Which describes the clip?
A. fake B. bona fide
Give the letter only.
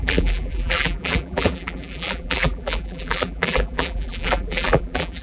A